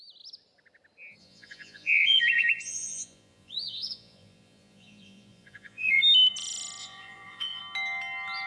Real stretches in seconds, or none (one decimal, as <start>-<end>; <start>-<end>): 0.0-1.2; 6.0-6.8; 7.6-8.5